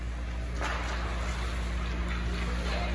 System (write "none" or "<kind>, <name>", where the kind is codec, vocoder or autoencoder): none